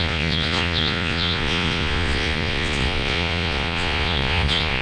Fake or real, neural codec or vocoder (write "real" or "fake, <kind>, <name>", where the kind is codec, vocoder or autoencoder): fake, vocoder, Vocos